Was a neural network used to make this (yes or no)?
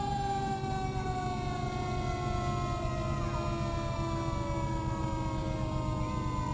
no